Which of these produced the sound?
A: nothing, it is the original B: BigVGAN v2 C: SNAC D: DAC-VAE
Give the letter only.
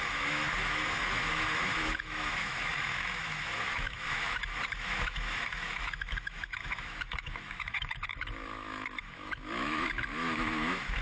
D